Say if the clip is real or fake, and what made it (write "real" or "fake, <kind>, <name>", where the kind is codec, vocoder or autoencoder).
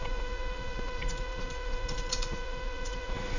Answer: fake, vocoder, Vocos